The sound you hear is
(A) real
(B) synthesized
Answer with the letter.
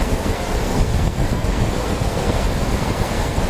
B